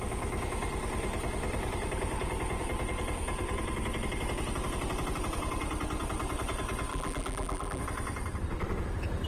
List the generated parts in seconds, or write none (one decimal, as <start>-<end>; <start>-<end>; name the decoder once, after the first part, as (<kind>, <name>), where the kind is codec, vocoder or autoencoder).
6.9-7.8 (vocoder, BigVGAN v2)